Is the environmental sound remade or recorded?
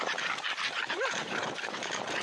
remade